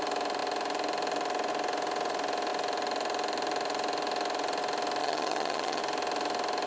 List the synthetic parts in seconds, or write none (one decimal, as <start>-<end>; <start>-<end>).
5.0-5.8